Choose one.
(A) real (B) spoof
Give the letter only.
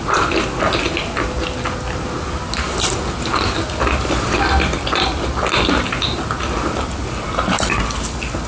A